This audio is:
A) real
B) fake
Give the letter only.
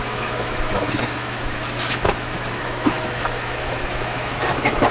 B